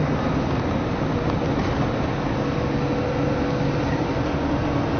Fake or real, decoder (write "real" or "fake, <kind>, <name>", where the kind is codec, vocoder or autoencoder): real